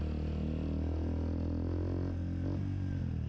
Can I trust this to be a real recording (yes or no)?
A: yes